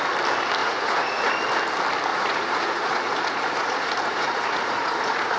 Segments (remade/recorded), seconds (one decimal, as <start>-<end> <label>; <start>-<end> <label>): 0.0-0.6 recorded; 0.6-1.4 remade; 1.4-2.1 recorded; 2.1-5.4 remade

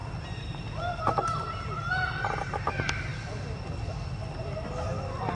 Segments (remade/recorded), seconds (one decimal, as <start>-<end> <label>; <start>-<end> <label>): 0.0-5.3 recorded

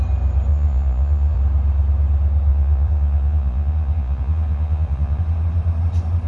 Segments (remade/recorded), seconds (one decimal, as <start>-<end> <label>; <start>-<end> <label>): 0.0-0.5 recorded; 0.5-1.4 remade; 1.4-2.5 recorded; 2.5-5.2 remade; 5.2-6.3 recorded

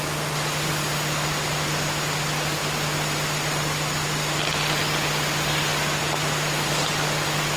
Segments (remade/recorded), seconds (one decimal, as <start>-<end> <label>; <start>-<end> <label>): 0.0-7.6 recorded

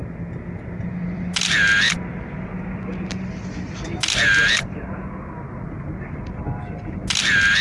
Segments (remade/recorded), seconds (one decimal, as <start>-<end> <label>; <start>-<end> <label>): 0.0-7.6 recorded

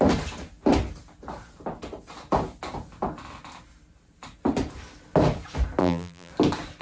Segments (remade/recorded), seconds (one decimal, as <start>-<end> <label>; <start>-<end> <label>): 0.0-5.8 recorded; 5.8-6.3 remade; 6.3-6.8 recorded

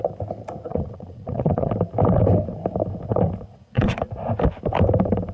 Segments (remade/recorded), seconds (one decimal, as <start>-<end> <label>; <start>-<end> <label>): 0.0-0.7 recorded; 0.7-1.7 remade; 1.7-3.5 recorded; 3.5-4.0 remade; 4.0-5.3 recorded